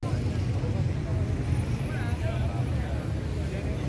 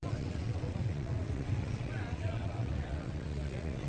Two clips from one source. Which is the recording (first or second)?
first